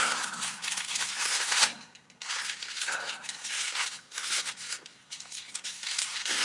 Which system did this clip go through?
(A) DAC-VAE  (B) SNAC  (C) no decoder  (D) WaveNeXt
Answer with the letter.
B